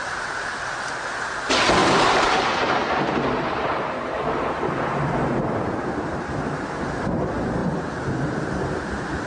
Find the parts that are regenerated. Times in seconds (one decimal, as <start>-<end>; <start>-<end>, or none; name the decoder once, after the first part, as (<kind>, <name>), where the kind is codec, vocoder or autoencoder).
1.8-6.9 (vocoder, BigVGAN v2); 7.6-9.3